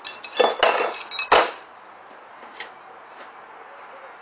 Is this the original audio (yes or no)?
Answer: yes